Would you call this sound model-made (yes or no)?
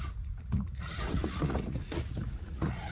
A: yes